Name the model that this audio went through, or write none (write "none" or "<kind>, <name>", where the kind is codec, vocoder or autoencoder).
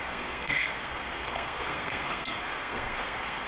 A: codec, SNAC